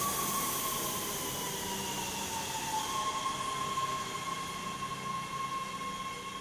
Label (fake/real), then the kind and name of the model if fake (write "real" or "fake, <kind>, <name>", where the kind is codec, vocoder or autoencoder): real